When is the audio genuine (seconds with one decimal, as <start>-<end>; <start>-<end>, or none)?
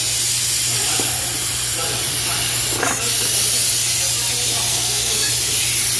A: 0.0-4.7; 5.3-6.0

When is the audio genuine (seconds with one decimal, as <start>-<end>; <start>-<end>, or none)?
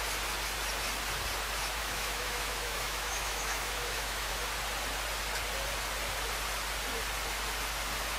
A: 0.0-1.8; 4.3-8.2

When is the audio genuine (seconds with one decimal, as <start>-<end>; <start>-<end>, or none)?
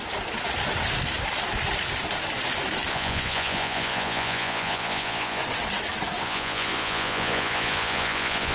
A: 0.0-2.9; 5.4-6.2